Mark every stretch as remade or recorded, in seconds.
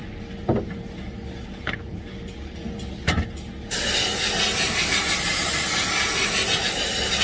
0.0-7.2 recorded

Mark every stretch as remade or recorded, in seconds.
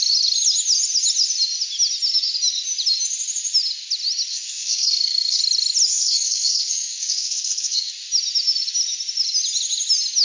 0.0-4.3 recorded; 4.3-5.4 remade; 5.4-5.9 recorded; 5.9-7.9 remade; 7.9-10.2 recorded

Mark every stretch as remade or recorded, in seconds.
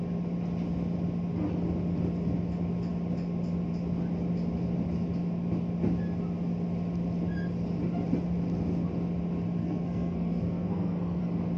0.0-9.6 recorded; 9.6-11.2 remade; 11.2-11.6 recorded